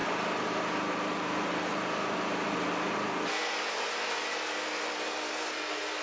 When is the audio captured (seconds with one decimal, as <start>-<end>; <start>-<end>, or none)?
0.0-6.0